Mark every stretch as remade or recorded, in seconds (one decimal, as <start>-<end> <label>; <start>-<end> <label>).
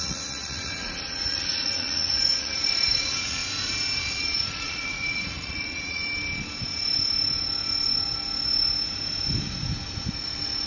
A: 0.0-3.4 remade; 3.4-4.0 recorded; 4.0-6.0 remade; 6.0-10.7 recorded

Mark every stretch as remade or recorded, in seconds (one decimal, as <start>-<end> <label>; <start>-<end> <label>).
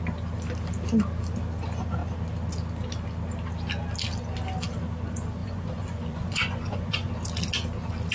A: 0.0-5.4 recorded; 5.4-7.1 remade; 7.1-8.1 recorded